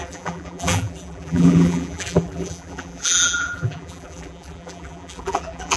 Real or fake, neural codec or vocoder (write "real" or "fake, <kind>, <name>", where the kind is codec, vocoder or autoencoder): fake, vocoder, BigVGAN v2